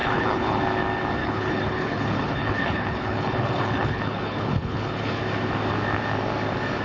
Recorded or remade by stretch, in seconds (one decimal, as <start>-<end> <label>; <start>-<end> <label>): 0.0-0.6 remade; 0.6-1.2 recorded; 1.2-5.2 remade; 5.2-6.8 recorded